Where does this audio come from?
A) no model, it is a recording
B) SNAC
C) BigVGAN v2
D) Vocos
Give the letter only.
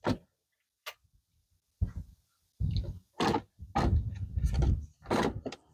A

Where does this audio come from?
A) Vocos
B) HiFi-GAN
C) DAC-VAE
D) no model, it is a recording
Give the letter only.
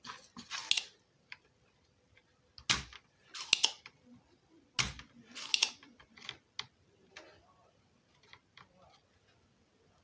D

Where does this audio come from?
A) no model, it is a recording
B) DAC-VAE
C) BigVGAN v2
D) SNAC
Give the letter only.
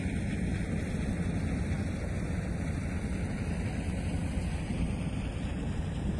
C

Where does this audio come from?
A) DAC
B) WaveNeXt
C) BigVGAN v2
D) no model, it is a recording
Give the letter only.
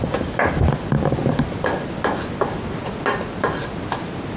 D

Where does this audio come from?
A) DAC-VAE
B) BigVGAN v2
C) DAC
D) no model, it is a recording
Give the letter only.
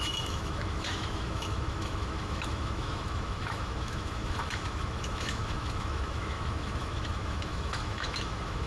A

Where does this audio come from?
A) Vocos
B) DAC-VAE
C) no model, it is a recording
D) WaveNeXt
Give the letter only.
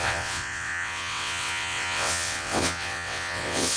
D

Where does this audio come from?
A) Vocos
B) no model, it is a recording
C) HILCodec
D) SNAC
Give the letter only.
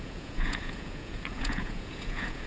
A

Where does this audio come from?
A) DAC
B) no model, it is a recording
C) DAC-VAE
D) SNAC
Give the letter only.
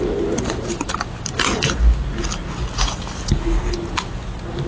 B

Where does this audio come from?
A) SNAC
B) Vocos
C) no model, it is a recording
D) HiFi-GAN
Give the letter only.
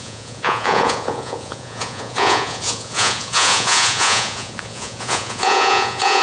B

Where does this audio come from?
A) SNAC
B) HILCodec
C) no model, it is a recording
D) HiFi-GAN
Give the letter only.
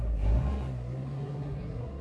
A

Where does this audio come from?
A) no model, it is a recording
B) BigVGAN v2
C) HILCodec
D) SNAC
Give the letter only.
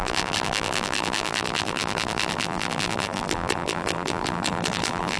B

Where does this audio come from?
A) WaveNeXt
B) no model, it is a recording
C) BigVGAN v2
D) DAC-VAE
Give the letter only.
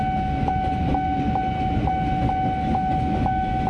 B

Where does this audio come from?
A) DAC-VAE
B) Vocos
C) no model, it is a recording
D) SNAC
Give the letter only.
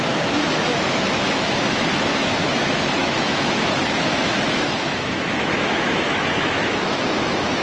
A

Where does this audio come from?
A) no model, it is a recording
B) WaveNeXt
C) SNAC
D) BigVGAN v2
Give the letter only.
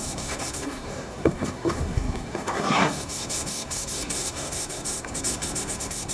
C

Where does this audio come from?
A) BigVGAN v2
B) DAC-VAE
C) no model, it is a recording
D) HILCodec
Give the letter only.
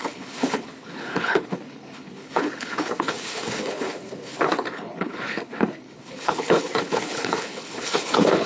D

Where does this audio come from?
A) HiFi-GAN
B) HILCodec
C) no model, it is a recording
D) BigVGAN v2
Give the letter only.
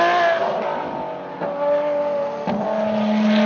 C